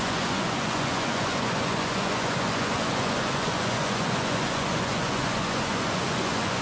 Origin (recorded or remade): remade